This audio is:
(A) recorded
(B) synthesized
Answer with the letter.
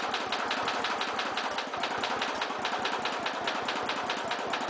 A